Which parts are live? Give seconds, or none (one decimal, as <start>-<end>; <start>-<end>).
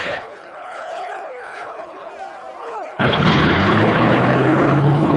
2.1-2.6